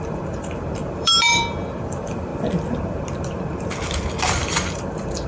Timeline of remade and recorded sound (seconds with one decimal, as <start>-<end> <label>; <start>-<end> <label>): 0.0-2.3 remade; 2.3-4.4 recorded; 4.4-5.3 remade